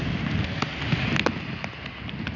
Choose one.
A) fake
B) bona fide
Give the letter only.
B